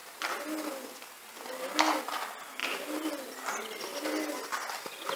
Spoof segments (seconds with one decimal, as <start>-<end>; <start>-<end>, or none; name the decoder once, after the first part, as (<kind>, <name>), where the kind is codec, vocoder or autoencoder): none